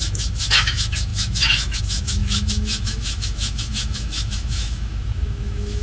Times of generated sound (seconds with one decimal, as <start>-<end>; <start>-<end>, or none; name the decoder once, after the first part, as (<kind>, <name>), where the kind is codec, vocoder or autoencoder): 0.0-5.8 (autoencoder, DAC-VAE)